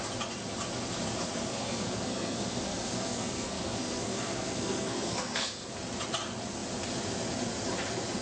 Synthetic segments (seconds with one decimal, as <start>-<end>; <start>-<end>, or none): 1.5-5.7